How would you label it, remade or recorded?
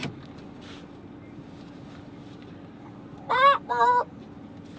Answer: recorded